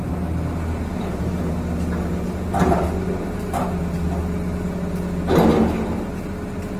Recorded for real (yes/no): yes